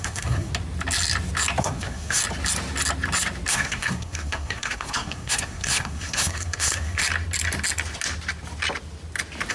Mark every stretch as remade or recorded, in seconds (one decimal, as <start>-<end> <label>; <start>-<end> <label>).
0.0-0.5 remade; 0.5-1.6 recorded; 1.6-2.2 remade; 2.2-3.5 recorded; 3.5-7.0 remade; 7.0-9.5 recorded